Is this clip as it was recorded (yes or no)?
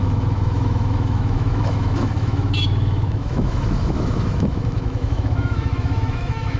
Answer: no